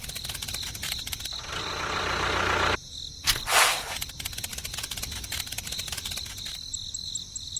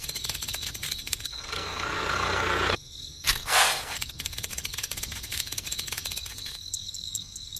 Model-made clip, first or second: second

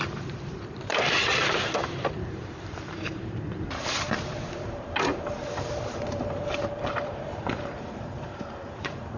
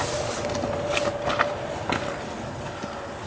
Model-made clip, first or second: first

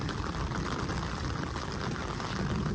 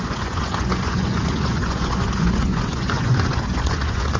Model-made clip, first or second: second